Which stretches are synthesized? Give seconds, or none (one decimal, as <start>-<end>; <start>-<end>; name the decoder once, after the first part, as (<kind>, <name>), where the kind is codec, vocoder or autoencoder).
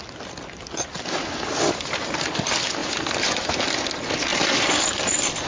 4.3-4.9 (vocoder, BigVGAN v2)